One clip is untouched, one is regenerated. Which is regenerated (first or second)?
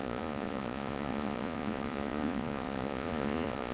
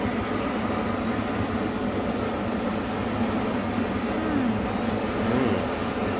first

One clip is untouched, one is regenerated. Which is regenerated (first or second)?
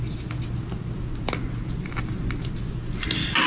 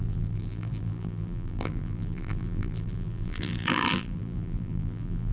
second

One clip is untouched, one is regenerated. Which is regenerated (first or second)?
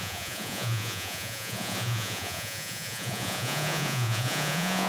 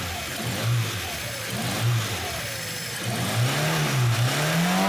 first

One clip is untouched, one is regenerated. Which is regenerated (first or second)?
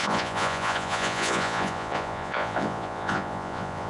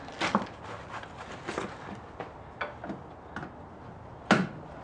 first